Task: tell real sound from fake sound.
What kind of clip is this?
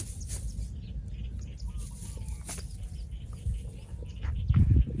real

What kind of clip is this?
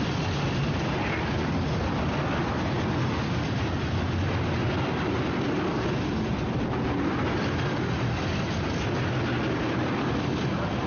real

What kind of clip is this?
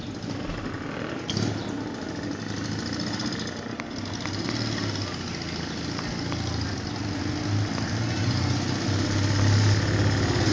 real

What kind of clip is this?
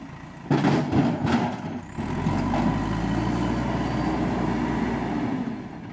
real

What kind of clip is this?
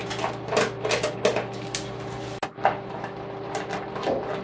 real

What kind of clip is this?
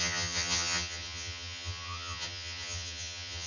fake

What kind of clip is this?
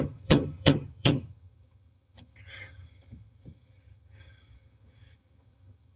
fake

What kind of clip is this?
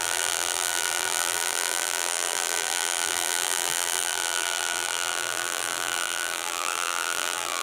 fake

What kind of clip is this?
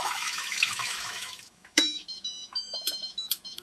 fake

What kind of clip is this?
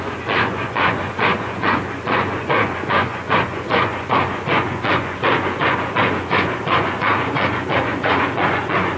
fake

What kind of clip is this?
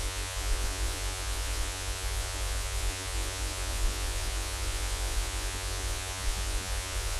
fake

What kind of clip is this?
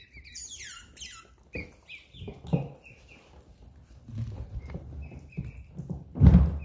real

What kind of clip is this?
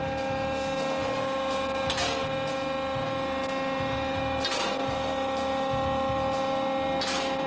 real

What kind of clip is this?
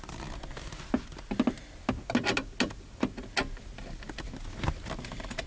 real